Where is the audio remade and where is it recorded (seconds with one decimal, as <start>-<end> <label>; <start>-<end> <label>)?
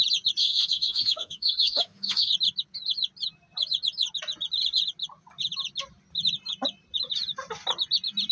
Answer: 0.0-0.4 recorded; 0.4-2.3 remade; 2.3-8.3 recorded